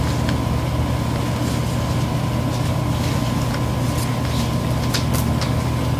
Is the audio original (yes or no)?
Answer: yes